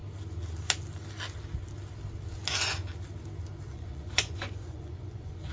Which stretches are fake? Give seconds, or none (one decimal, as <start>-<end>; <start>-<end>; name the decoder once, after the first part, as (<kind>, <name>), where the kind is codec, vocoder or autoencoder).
2.5-2.9 (vocoder, Vocos); 3.7-5.5